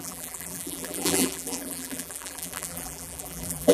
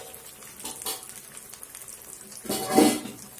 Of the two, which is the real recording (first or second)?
second